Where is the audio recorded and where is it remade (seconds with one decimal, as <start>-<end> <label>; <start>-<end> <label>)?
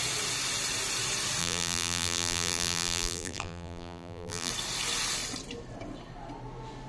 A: 0.0-1.4 recorded; 1.4-4.5 remade; 4.5-6.9 recorded